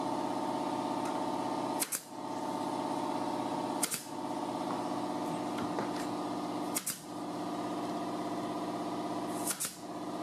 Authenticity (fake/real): real